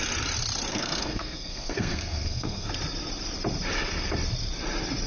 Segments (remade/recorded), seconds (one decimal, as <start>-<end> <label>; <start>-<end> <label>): 0.0-0.7 recorded; 0.7-2.7 remade; 2.7-5.1 recorded